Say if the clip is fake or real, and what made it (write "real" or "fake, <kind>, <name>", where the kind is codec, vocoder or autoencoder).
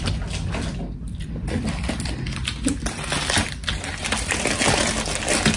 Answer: real